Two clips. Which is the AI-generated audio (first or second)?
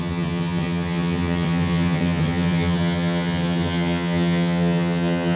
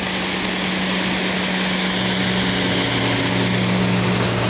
first